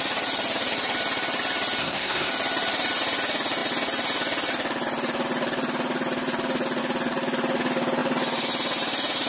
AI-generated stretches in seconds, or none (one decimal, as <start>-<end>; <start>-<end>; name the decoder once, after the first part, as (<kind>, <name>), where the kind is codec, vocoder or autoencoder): 1.8-2.3 (codec, SNAC)